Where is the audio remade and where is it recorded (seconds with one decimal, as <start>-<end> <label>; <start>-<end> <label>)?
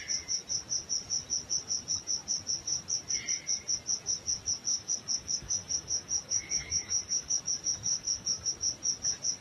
0.0-4.7 recorded; 4.7-7.4 remade; 7.4-7.9 recorded; 7.9-8.5 remade; 8.5-9.4 recorded